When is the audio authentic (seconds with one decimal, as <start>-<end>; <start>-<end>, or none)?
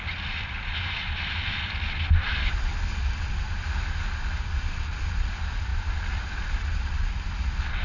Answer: 0.0-7.8